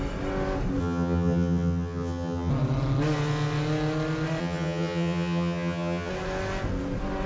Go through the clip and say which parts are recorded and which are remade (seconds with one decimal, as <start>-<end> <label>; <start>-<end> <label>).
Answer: 0.0-0.8 recorded; 0.8-2.5 remade; 2.5-4.4 recorded; 4.4-6.1 remade; 6.1-7.3 recorded